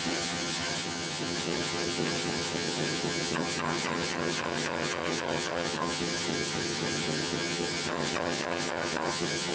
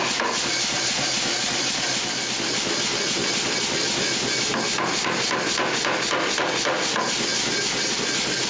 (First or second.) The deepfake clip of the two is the first